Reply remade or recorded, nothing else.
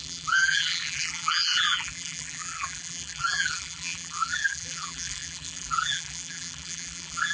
remade